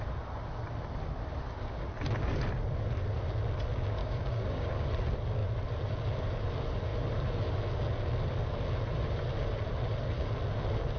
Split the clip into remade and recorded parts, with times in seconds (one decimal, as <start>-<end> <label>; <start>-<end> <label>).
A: 0.0-4.0 recorded; 4.0-4.9 remade; 4.9-11.0 recorded